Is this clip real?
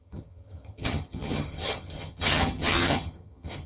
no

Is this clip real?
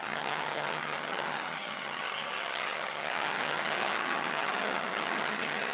no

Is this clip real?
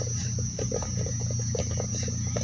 yes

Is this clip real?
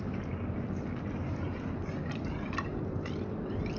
yes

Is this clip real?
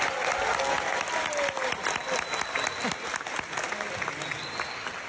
yes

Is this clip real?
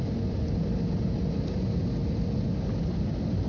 yes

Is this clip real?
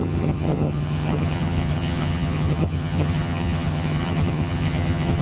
no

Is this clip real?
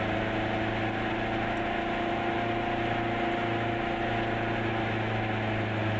yes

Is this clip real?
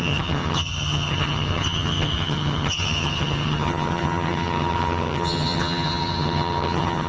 no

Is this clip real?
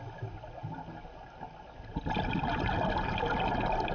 yes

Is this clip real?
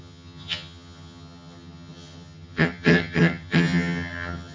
no